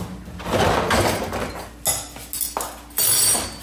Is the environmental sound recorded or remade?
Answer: recorded